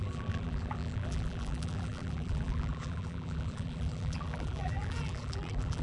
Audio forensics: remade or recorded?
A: remade